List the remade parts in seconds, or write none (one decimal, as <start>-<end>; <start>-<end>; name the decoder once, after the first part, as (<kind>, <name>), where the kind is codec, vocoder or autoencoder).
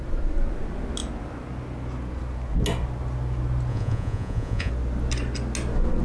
3.7-4.7 (vocoder, Vocos)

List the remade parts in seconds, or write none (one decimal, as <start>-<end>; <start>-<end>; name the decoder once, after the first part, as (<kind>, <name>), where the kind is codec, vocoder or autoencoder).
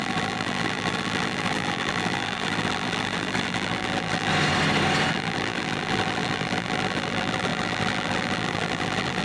0.0-4.3 (vocoder, BigVGAN v2); 5.1-9.2